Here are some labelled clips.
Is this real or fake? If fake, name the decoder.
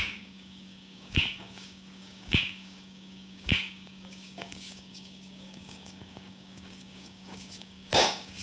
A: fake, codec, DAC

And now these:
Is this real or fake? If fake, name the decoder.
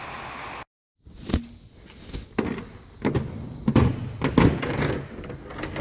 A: real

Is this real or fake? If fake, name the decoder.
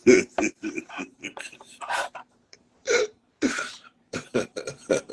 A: fake, vocoder, BigVGAN v2